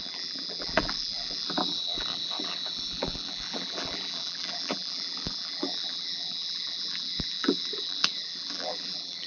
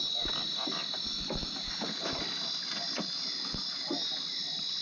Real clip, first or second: second